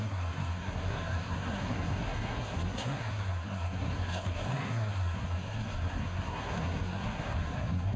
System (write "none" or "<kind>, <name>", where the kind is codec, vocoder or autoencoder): codec, SNAC